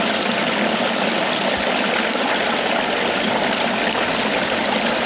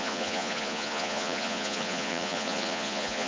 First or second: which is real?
first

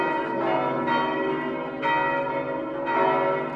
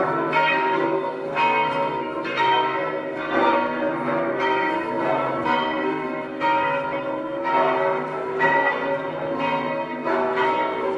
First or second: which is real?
first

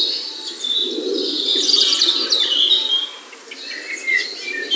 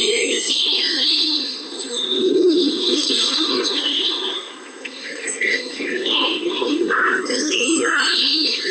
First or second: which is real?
first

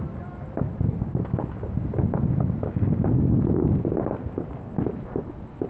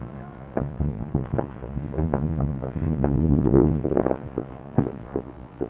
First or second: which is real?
first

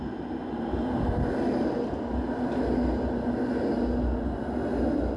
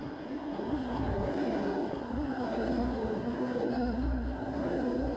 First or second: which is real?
first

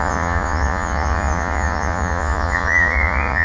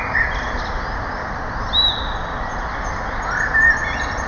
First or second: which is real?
second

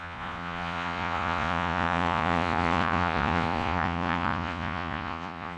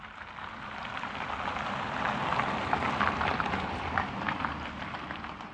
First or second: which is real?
second